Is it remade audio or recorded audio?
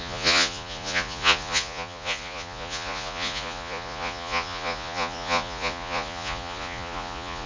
remade